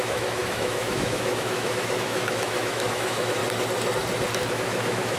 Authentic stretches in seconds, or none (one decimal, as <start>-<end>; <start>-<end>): 3.4-4.5